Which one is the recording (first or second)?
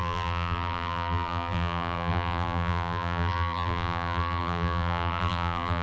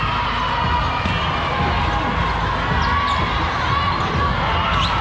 second